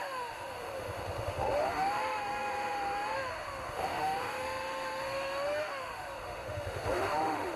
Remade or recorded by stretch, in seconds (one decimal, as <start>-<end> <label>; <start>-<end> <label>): 0.0-7.6 remade